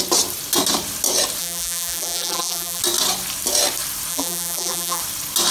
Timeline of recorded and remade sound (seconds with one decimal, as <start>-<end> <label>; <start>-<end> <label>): 0.0-1.4 recorded; 1.4-2.8 remade; 2.8-4.1 recorded; 4.1-5.0 remade; 5.0-5.5 recorded

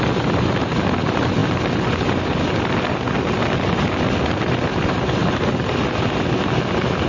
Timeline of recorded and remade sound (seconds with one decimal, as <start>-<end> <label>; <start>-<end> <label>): 0.0-5.2 recorded; 5.2-6.0 remade; 6.0-7.1 recorded

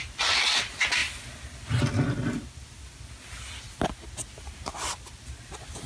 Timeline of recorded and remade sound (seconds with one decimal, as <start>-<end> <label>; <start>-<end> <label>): 0.0-5.9 recorded

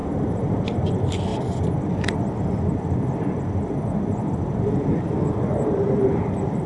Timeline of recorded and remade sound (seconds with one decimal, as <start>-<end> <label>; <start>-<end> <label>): 0.0-0.6 remade; 0.6-4.2 recorded; 4.2-6.7 remade

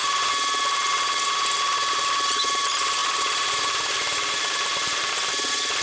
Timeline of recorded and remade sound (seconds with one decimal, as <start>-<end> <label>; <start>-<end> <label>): 0.0-2.4 recorded; 2.4-5.8 remade

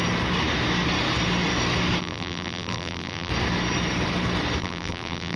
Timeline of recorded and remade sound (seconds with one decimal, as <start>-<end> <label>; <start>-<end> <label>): 0.0-2.0 recorded; 2.0-3.3 remade; 3.3-4.6 recorded; 4.6-5.4 remade